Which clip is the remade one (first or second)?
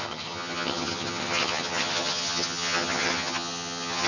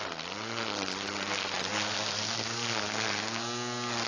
first